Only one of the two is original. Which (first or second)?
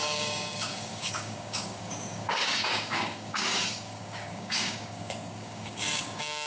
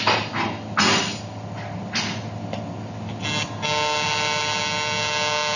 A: second